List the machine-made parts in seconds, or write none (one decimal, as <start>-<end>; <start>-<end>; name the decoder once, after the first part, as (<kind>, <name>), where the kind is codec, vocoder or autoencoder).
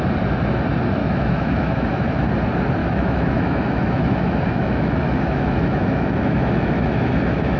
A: 1.0-2.2 (autoencoder, DAC-VAE); 2.8-7.6